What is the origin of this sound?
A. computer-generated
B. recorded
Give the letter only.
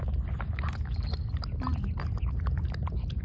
B